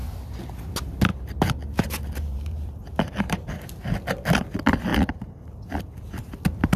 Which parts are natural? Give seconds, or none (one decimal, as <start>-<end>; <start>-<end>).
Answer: 0.0-1.1; 3.5-4.9; 5.6-6.8